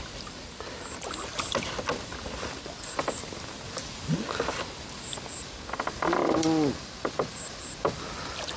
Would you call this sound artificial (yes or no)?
no